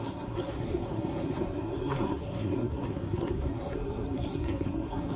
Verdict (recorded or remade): remade